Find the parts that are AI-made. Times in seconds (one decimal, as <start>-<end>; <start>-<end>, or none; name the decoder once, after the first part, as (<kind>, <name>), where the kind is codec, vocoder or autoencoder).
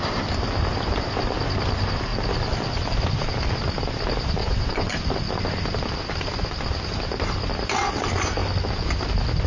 4.4-5.0 (vocoder, WaveNeXt)